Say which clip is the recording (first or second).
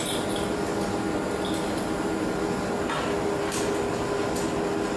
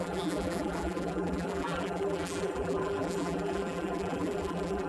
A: first